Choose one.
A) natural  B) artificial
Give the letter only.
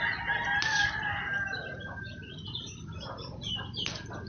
A